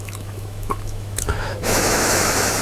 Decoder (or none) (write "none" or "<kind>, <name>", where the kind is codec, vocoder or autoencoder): autoencoder, DAC-VAE